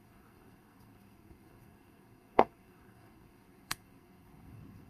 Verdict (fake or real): fake